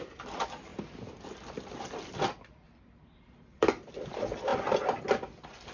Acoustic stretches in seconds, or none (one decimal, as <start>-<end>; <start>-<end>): 0.0-5.7